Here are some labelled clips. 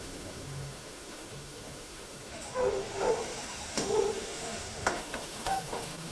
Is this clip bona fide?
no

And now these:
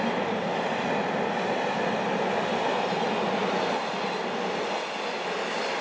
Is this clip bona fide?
yes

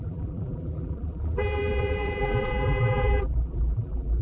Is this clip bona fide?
no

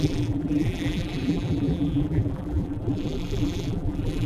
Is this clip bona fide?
no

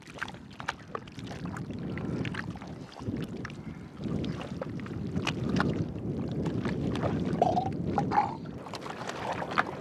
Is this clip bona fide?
yes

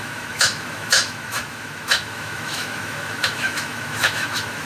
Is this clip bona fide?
no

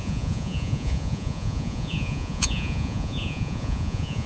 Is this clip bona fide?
no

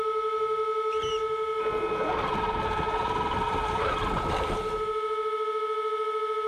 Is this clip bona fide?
yes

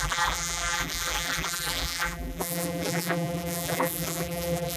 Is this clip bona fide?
no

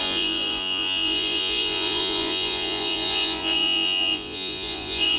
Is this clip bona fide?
no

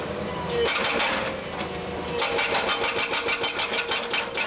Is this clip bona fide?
yes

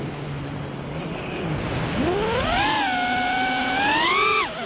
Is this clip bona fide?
yes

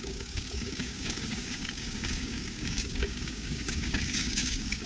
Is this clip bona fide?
no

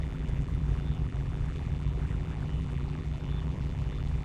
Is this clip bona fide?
no